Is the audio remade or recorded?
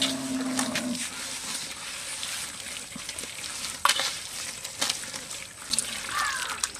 recorded